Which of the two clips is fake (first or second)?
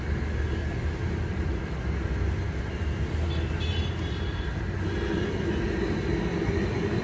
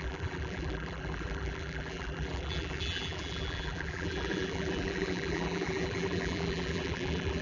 second